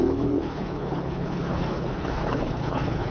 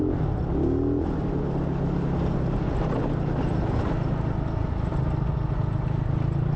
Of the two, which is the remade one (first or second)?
first